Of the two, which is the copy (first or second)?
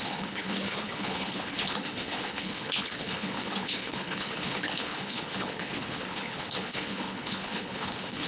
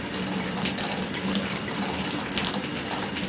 first